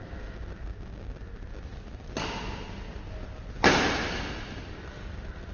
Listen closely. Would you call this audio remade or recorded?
recorded